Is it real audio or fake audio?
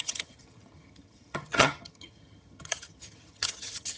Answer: fake